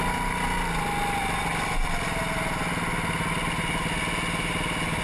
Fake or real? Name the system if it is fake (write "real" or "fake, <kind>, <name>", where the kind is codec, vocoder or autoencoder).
real